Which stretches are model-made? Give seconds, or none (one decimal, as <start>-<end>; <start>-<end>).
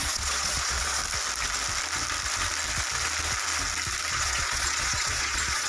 0.0-1.0; 4.1-5.7